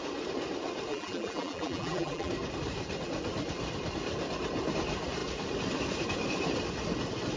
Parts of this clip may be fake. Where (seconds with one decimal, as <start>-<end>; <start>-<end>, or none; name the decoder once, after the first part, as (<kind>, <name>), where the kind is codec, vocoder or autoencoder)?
0.9-2.3 (vocoder, BigVGAN v2)